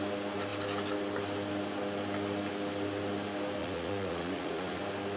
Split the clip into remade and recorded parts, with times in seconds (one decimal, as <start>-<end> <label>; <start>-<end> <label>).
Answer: 0.0-3.6 recorded; 3.6-4.8 remade; 4.8-5.2 recorded